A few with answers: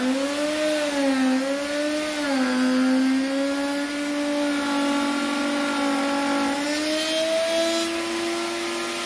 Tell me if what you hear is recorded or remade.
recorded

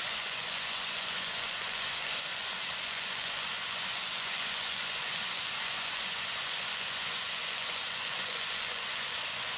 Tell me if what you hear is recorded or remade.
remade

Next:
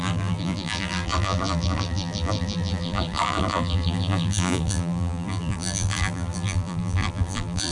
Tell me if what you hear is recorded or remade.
remade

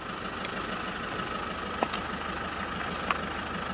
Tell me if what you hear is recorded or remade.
recorded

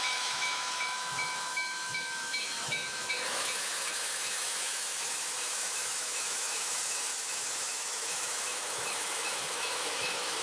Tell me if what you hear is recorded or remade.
remade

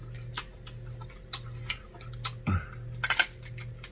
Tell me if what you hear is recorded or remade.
recorded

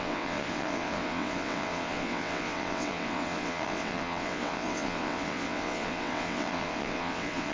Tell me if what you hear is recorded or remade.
remade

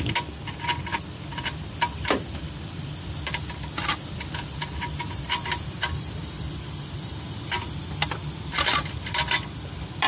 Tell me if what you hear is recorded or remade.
remade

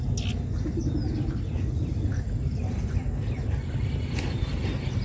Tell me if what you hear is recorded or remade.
recorded